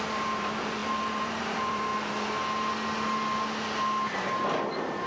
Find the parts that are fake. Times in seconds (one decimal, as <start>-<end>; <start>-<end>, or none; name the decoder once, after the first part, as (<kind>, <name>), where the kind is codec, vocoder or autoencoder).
0.0-1.9 (vocoder, BigVGAN v2)